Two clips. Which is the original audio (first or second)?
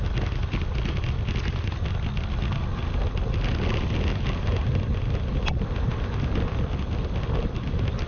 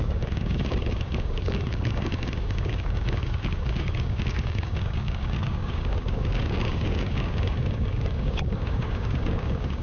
first